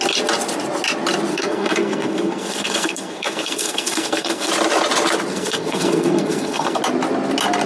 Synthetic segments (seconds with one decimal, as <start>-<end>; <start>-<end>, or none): 1.3-4.5; 5.3-6.8